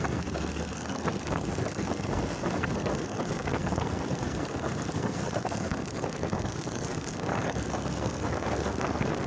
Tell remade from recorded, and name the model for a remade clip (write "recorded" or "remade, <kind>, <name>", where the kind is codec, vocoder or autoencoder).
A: remade, codec, SNAC